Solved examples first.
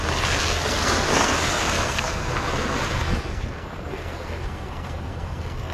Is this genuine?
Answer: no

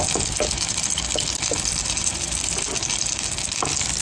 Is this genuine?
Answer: yes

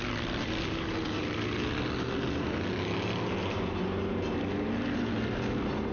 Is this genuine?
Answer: yes